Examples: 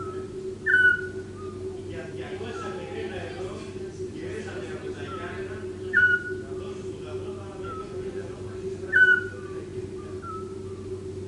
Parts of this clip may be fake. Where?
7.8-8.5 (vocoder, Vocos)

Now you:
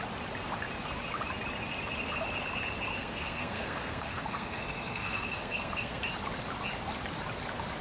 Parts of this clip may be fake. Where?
3.0-6.0 (codec, SNAC)

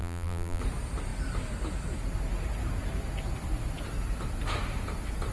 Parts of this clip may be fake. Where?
0.0-0.6 (vocoder, BigVGAN v2)

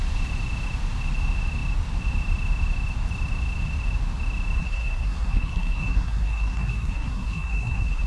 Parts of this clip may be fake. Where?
4.6-8.1 (codec, SNAC)

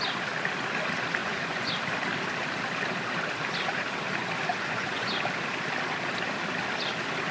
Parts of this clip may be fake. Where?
1.2-1.7 (vocoder, Vocos); 4.5-5.1

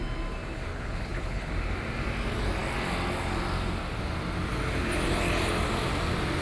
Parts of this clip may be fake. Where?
0.7-1.5 (codec, HILCodec)

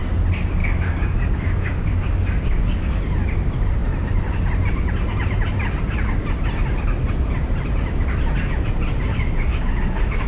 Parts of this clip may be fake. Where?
0.6-3.0 (codec, DAC); 9.1-10.3